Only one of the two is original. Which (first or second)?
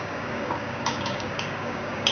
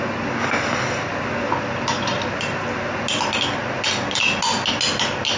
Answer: second